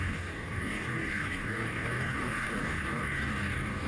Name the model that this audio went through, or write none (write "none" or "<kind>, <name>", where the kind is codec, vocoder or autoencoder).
codec, DAC